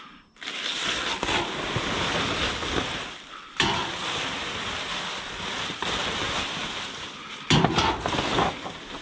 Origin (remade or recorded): recorded